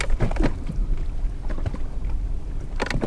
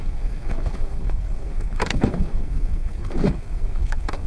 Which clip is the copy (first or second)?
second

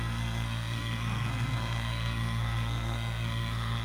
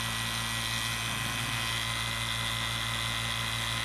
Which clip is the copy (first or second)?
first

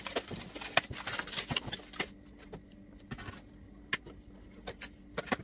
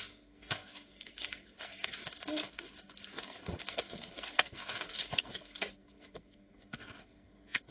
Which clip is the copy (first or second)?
second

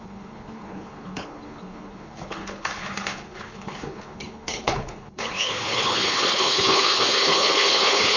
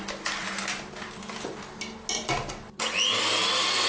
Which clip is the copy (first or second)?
first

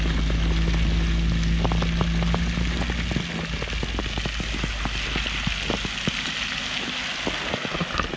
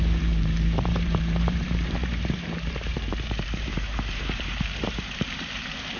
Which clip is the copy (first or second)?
second